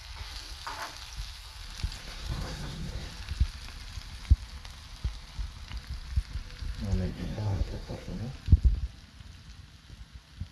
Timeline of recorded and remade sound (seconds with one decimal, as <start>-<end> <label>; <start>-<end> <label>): 0.0-2.0 recorded; 2.0-3.1 remade; 3.1-7.1 recorded; 7.1-8.2 remade; 8.2-10.5 recorded